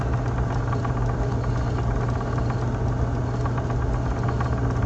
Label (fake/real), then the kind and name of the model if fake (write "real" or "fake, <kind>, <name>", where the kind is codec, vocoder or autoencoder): real